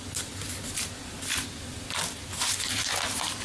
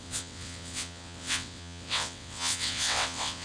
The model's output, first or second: second